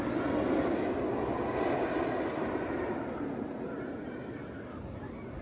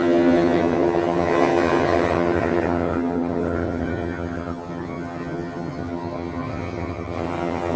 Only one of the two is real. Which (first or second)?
first